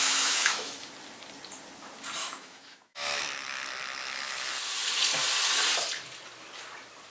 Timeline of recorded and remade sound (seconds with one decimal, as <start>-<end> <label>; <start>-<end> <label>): 0.0-0.9 remade; 0.9-2.2 recorded; 2.2-3.2 remade; 3.2-7.1 recorded